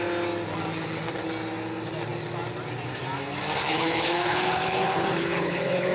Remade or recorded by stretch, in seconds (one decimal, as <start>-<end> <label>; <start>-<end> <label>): 0.0-3.6 recorded; 3.6-5.9 remade